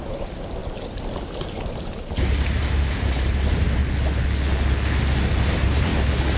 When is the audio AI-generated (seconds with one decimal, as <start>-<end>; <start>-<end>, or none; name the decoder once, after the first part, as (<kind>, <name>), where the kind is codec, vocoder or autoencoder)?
0.0-0.6 (vocoder, BigVGAN v2); 2.2-3.8; 5.3-5.9